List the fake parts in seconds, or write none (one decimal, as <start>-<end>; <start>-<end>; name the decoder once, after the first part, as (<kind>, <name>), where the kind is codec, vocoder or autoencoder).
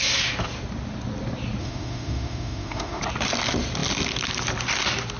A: 1.6-3.0 (autoencoder, DAC-VAE)